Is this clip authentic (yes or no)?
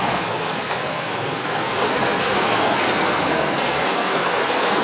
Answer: no